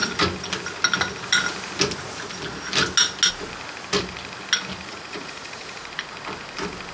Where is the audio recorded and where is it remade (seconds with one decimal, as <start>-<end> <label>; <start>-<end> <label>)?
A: 0.0-4.9 recorded; 4.9-5.9 remade; 5.9-6.9 recorded